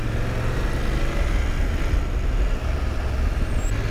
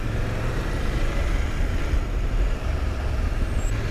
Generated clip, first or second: second